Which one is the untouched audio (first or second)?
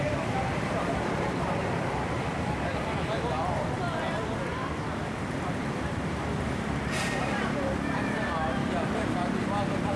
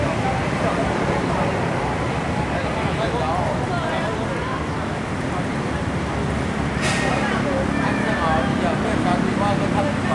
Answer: second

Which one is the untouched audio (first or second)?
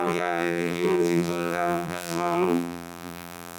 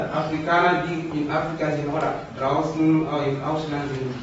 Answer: second